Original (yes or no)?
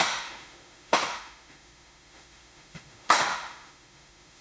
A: no